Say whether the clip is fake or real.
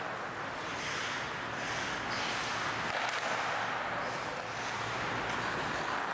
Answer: real